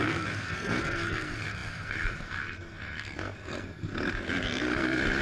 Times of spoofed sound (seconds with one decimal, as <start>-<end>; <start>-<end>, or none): 0.0-5.2